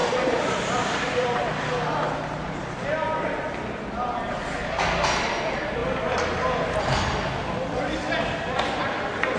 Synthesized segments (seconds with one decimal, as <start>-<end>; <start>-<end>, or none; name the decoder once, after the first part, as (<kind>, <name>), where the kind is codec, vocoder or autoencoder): 0.0-1.7 (vocoder, BigVGAN v2); 5.8-8.8